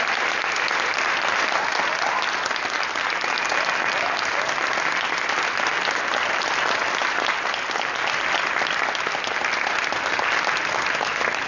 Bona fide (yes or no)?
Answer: yes